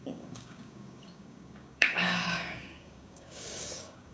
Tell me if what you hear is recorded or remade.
remade